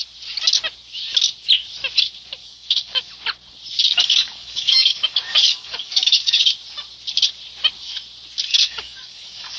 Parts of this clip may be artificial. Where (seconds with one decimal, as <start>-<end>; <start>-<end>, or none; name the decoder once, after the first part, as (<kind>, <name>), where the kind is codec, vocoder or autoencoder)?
2.4-3.1 (codec, DAC); 3.8-6.4; 8.5-9.6